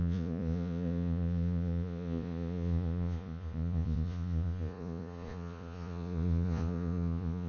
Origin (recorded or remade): remade